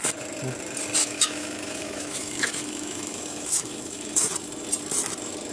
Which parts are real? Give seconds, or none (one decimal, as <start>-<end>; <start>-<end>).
0.0-1.0; 4.3-5.5